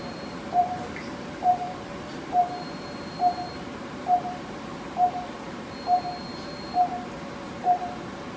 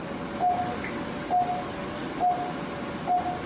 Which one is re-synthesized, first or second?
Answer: first